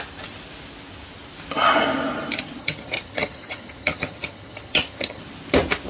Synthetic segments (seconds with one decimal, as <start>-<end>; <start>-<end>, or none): 2.6-5.2